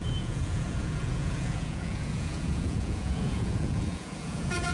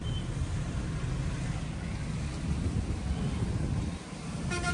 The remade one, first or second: first